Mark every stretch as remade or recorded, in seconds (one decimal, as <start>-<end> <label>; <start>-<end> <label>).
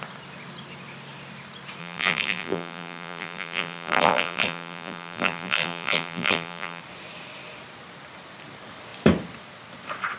0.0-1.8 recorded; 1.8-6.8 remade; 6.8-10.2 recorded